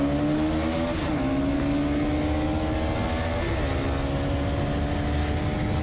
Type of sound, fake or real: real